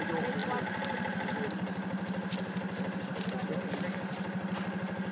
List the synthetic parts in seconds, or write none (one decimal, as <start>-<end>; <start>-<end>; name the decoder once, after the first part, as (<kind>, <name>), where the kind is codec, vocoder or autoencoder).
none